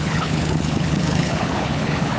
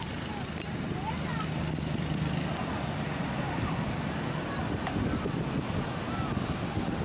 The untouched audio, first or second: second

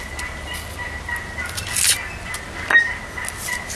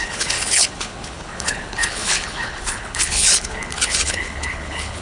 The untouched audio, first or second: first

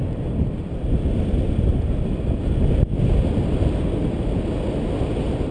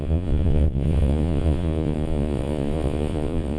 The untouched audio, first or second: first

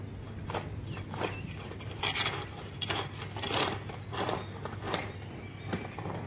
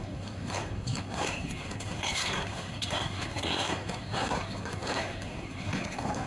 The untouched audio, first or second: first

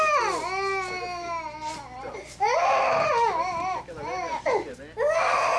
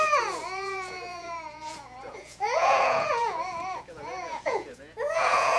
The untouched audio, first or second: first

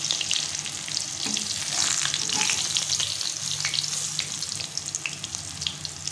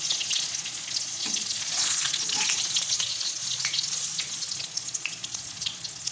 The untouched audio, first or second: first